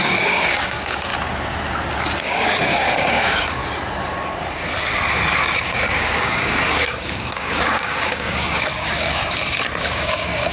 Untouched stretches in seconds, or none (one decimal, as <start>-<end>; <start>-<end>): 1.1-2.2; 3.6-5.6; 9.2-9.8